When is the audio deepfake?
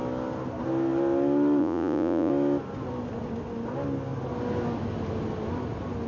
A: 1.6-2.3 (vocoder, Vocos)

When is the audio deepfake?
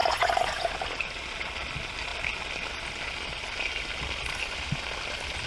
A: 0.0-0.7 (vocoder, Vocos)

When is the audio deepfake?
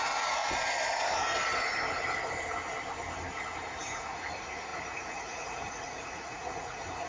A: 0.0-0.4 (vocoder, Vocos); 3.8-7.1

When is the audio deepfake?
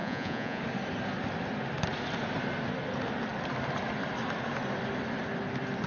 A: 0.0-0.6 (vocoder, Vocos)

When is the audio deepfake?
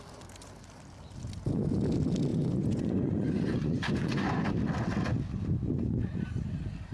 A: 2.3-4.5 (vocoder, Vocos)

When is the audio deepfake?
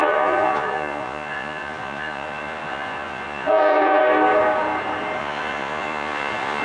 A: 0.0-4.0 (vocoder, Vocos); 5.2-6.6